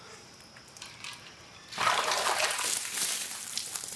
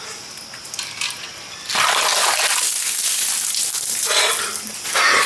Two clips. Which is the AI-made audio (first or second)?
first